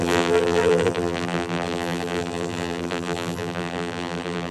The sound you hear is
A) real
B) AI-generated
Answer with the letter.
B